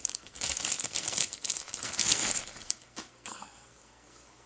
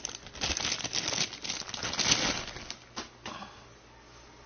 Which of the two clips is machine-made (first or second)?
first